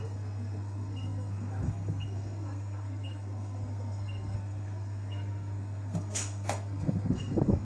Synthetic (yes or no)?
yes